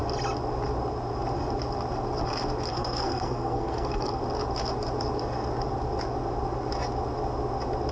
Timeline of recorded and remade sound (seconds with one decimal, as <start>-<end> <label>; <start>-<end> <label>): 0.0-2.7 recorded; 2.7-4.2 remade; 4.2-7.9 recorded